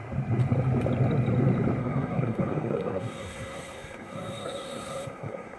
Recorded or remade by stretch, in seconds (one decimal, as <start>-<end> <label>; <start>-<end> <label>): 0.0-1.8 recorded; 1.8-5.6 remade